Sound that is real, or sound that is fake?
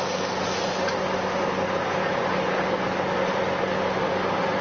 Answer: real